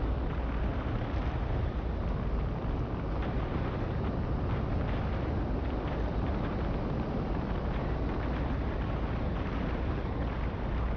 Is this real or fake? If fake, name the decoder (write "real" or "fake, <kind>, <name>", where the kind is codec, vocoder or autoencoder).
real